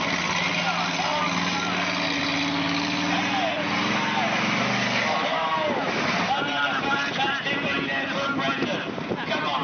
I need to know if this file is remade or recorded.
recorded